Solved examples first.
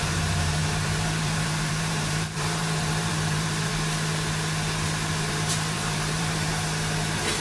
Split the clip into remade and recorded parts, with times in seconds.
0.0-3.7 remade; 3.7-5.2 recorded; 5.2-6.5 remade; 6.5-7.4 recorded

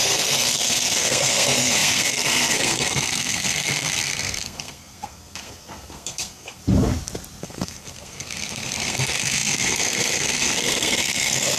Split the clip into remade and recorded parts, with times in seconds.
0.0-6.6 remade; 6.6-7.4 recorded; 7.4-11.6 remade

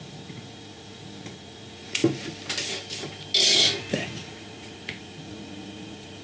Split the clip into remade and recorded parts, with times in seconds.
0.0-2.0 remade; 2.0-3.9 recorded; 3.9-6.2 remade

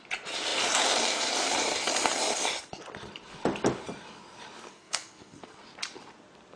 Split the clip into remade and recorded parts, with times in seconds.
0.0-4.7 recorded; 4.7-5.6 remade; 5.6-6.6 recorded

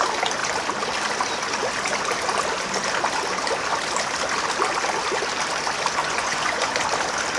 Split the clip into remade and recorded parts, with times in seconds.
0.0-6.0 recorded; 6.0-6.7 remade; 6.7-7.4 recorded

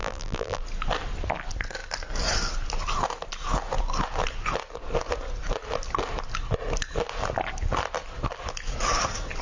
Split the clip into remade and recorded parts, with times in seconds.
0.0-0.6 remade; 0.6-9.4 recorded